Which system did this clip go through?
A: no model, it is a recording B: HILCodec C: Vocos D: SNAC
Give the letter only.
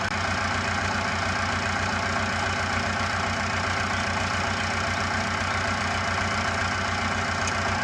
A